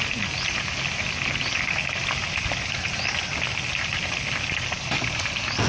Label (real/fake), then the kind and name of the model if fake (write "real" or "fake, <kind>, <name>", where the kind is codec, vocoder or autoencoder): real